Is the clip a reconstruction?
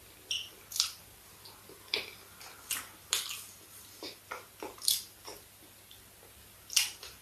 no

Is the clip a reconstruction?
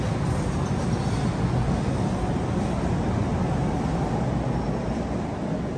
no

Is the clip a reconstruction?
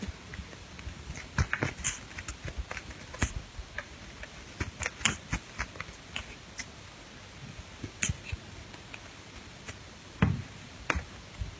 no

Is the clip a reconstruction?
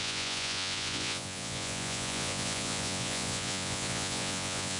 yes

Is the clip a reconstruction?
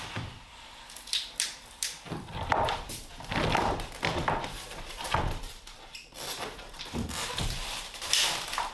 yes